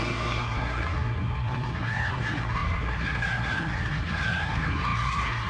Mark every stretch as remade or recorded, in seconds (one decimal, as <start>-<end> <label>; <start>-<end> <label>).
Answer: 0.0-5.5 remade